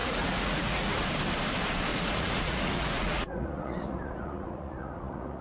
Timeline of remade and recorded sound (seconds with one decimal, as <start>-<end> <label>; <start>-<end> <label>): 0.0-0.9 remade; 0.9-1.9 recorded; 1.9-5.4 remade